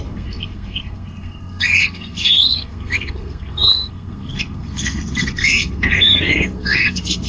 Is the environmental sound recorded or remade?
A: remade